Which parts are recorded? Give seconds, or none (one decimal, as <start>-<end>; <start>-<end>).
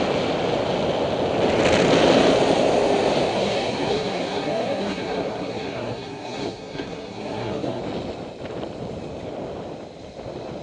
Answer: 0.0-3.3; 7.8-10.6